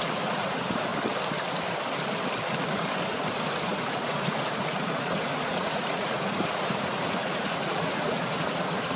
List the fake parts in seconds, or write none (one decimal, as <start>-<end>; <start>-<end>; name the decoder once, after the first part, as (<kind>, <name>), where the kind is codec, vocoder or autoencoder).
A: 0.0-0.9 (vocoder, Vocos); 3.1-9.0